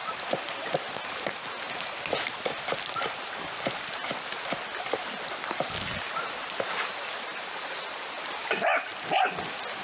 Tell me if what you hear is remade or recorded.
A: recorded